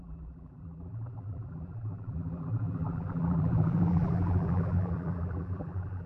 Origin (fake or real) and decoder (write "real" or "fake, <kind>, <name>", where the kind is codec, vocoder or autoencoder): fake, vocoder, BigVGAN v2